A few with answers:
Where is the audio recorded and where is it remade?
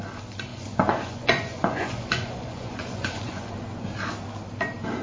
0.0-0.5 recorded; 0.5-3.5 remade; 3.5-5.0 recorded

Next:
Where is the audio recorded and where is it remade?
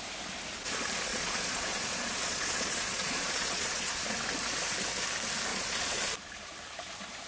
0.0-1.1 recorded; 1.1-4.0 remade; 4.0-5.5 recorded; 5.5-6.1 remade; 6.1-7.3 recorded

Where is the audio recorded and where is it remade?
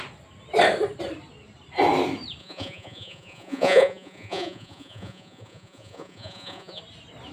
0.0-2.4 recorded; 2.4-6.8 remade; 6.8-7.3 recorded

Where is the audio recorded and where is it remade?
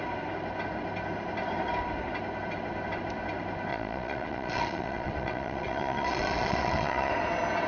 0.0-3.7 recorded; 3.7-7.1 remade; 7.1-7.7 recorded